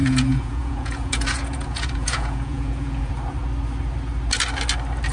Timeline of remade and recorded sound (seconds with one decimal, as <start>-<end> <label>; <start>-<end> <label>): 0.0-3.1 remade; 3.1-5.1 recorded